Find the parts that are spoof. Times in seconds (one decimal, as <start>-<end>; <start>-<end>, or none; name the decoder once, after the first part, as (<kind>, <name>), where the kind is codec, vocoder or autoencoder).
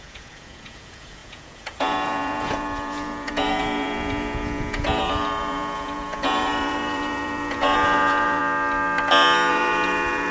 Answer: 0.0-8.4 (vocoder, Vocos); 9.5-10.3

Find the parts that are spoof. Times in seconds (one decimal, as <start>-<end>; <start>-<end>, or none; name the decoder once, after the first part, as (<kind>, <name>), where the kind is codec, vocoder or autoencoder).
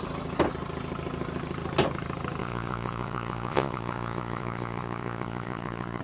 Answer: 2.4-6.0 (vocoder, Vocos)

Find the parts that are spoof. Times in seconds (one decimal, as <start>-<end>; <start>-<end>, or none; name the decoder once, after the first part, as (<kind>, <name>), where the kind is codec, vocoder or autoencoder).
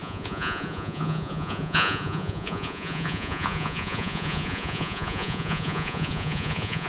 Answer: 0.0-6.9 (vocoder, Vocos)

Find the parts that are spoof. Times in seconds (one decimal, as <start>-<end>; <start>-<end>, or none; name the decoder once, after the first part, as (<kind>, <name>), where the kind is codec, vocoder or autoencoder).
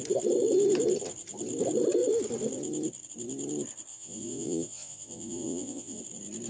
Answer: 3.9-6.0 (vocoder, Vocos)